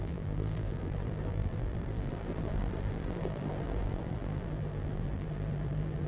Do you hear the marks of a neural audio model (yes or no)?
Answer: yes